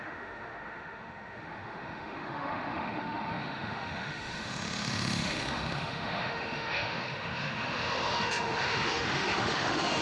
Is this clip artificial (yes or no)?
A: yes